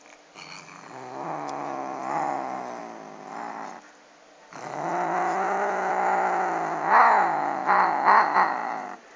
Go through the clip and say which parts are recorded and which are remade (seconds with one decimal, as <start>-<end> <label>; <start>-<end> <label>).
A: 0.0-8.6 recorded; 8.6-9.2 remade